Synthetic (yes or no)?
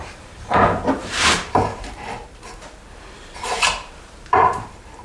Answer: yes